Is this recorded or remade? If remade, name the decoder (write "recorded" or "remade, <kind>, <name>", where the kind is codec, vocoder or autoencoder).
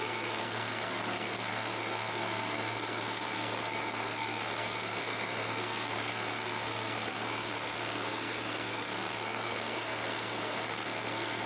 remade, codec, SNAC